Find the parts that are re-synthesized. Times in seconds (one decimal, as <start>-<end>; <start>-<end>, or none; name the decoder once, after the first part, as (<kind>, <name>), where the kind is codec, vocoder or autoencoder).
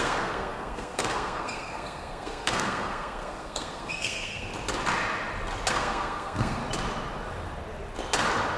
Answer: 0.0-4.5 (codec, SNAC); 5.7-6.6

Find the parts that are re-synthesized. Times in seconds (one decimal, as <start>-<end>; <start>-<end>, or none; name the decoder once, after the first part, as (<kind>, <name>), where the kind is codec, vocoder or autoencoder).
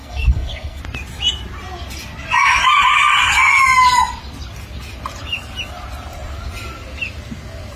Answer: 0.0-0.8 (codec, SNAC)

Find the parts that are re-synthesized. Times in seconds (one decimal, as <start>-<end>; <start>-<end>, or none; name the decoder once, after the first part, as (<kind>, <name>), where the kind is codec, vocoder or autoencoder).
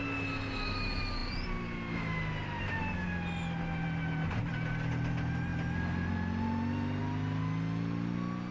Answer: none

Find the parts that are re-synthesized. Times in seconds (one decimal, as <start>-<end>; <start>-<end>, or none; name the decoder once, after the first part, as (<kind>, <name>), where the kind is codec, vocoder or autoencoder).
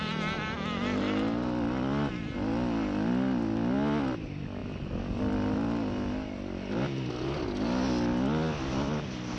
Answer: none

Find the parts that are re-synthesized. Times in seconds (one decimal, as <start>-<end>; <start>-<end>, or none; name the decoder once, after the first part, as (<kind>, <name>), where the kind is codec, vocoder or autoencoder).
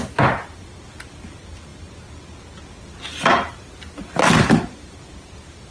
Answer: none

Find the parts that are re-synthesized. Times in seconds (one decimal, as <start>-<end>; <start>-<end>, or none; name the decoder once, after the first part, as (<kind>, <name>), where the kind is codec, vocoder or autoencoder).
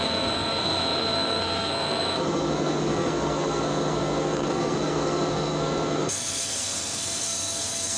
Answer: 0.0-8.0 (codec, SNAC)